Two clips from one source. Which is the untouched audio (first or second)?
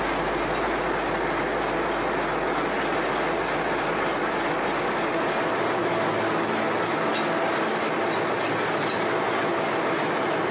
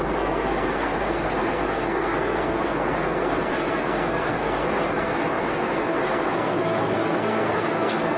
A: first